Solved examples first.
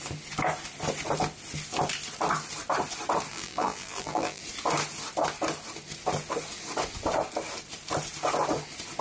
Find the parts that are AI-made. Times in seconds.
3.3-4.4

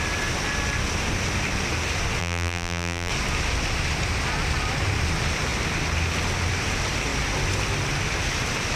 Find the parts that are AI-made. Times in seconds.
2.2-3.1